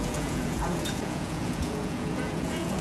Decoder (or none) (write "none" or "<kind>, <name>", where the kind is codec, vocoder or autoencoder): vocoder, Vocos